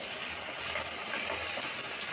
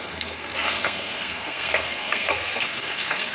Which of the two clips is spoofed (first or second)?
second